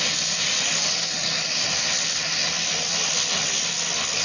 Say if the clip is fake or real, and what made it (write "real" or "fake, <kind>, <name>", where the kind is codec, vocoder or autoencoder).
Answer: real